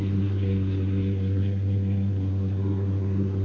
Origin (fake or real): fake